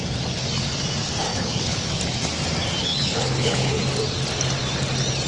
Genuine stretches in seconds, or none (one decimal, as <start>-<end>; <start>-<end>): 0.0-1.3; 2.0-2.8; 3.8-5.3